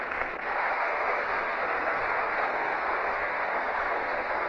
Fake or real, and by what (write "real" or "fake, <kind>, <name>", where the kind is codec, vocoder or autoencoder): fake, codec, SNAC